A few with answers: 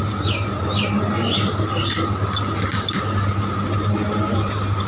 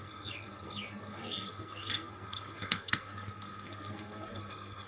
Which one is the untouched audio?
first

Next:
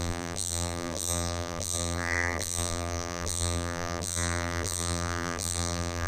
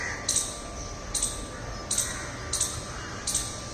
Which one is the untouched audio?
second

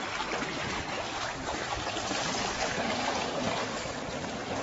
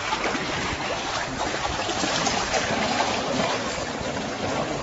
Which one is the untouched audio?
first